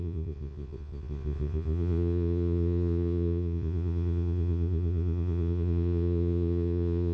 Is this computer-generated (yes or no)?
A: yes